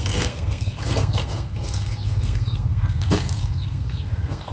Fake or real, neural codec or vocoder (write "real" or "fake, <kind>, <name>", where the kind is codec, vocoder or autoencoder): fake, codec, SNAC